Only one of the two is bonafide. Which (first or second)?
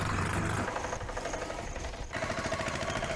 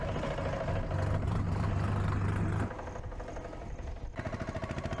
second